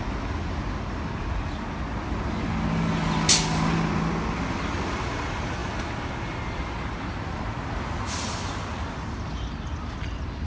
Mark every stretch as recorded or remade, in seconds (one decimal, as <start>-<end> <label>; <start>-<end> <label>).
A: 0.0-10.5 recorded

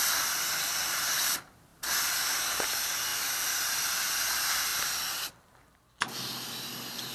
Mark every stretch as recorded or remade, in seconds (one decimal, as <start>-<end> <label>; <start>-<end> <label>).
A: 0.0-7.1 recorded